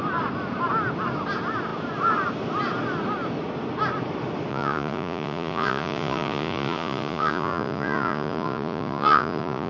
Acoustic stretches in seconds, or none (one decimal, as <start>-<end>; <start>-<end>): 0.0-4.5